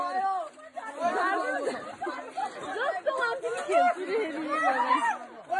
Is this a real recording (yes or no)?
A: yes